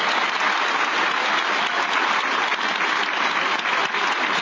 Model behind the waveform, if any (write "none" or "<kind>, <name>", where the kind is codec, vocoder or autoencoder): none